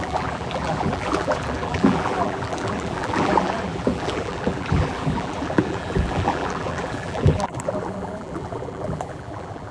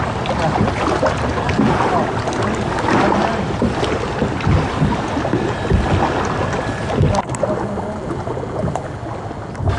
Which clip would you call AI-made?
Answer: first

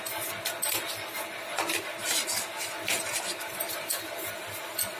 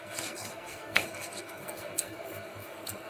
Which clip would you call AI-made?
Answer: second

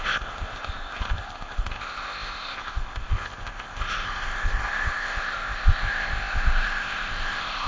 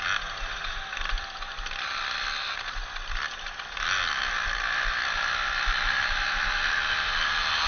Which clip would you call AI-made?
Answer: first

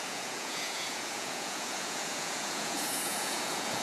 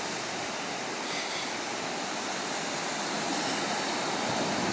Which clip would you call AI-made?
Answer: first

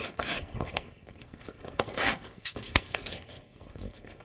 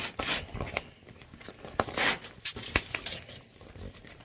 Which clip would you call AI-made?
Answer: first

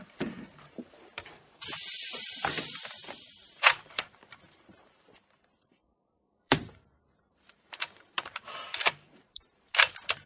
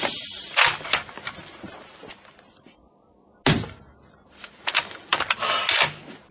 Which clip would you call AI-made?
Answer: first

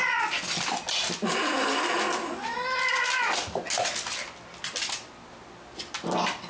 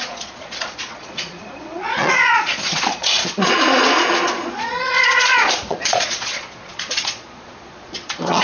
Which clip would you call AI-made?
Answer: second